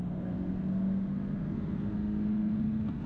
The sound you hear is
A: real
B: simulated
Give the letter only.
B